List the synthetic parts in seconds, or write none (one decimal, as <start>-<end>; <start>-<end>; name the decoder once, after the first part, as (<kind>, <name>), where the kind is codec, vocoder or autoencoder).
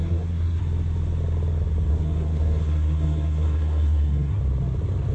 0.0-0.6 (codec, SNAC); 1.9-4.4